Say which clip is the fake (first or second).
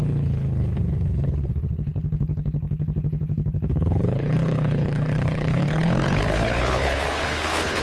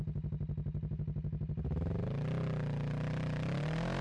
first